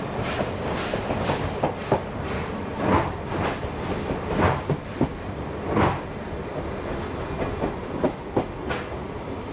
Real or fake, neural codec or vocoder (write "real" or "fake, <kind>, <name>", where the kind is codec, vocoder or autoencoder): real